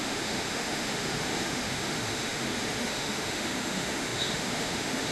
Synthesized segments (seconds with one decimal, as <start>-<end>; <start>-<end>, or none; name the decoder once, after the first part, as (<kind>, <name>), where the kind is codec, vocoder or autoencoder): 0.0-5.1 (autoencoder, DAC-VAE)